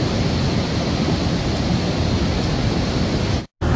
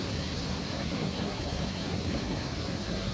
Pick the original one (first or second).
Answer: first